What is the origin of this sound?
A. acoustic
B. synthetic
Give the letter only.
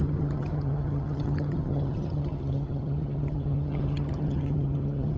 B